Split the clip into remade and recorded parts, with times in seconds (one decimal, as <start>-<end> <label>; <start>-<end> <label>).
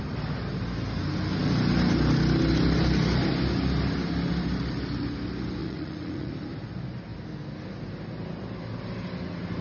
0.0-5.6 recorded; 5.6-6.3 remade; 6.3-9.6 recorded